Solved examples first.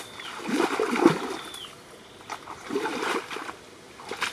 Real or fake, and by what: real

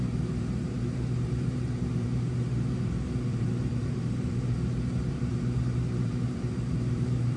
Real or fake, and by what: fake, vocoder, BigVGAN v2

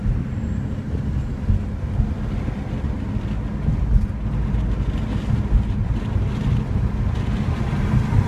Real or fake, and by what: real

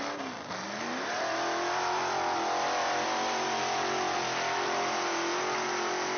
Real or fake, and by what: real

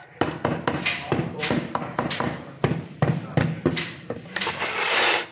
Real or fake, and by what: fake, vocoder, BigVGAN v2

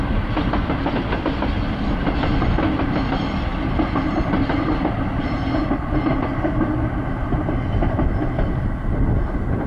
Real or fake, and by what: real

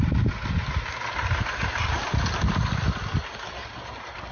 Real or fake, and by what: real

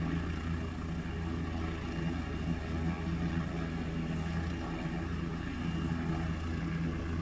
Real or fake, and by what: real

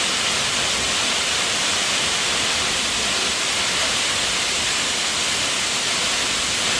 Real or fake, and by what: real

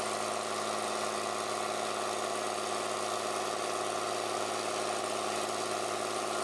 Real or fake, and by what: real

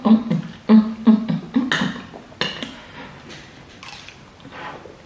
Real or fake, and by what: real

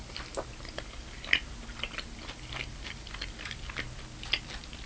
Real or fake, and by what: real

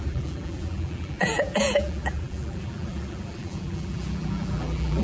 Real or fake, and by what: fake, vocoder, BigVGAN v2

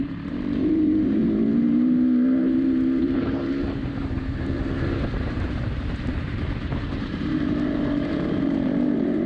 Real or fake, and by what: fake, vocoder, BigVGAN v2